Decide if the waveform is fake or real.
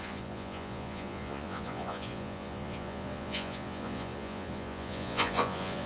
fake